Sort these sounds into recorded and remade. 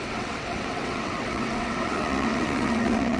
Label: remade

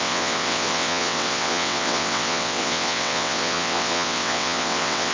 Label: remade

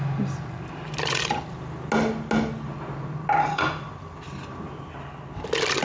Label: recorded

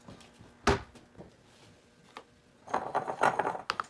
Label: recorded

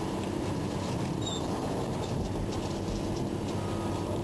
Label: recorded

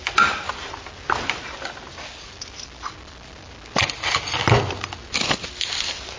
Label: recorded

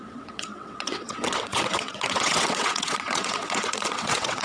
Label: remade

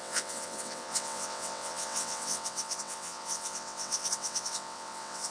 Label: remade